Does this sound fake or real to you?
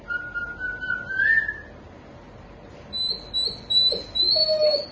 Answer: real